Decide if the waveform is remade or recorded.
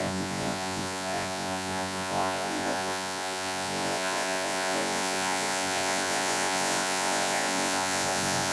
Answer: remade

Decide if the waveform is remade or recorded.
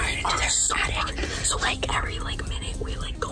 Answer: recorded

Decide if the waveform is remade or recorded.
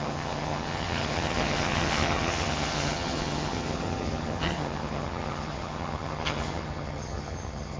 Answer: remade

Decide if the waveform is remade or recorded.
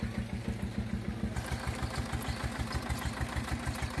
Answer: recorded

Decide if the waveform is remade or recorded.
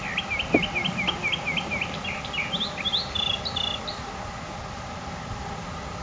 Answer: recorded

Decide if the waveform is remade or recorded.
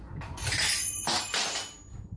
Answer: recorded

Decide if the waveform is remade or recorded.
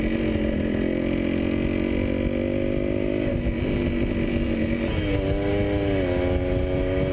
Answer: recorded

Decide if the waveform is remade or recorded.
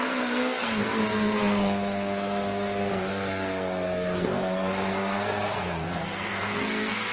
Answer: remade